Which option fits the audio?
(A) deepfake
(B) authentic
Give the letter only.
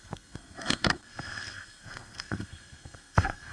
A